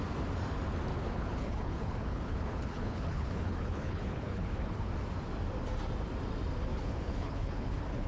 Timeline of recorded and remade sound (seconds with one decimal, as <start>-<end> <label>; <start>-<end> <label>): 0.0-0.9 recorded; 0.9-4.9 remade; 4.9-6.7 recorded; 6.7-8.1 remade